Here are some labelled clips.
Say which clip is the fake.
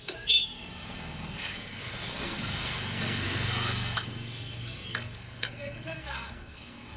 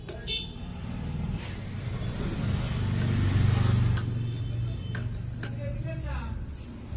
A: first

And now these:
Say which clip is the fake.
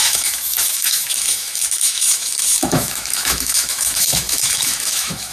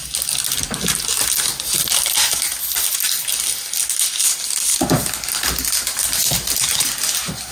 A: first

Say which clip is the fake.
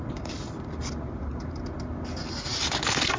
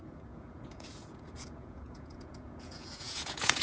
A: second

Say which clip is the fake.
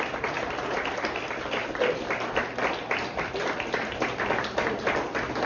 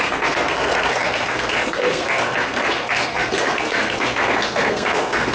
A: second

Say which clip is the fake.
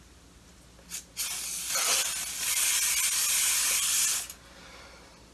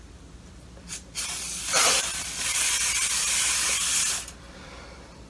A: second